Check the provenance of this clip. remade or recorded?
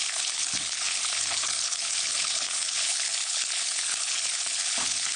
remade